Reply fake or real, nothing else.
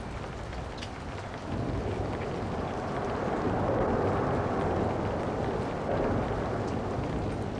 real